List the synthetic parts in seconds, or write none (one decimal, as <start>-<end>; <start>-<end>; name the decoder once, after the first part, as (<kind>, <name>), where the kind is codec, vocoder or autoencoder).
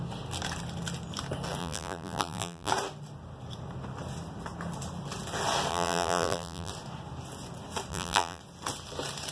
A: 1.6-2.7 (vocoder, BigVGAN v2); 5.7-6.7; 7.9-8.4